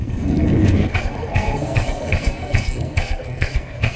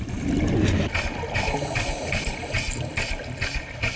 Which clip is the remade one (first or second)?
first